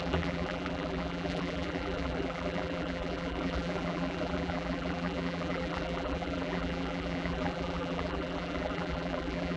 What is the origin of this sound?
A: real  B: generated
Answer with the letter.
B